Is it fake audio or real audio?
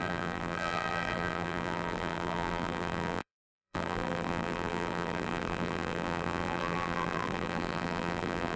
fake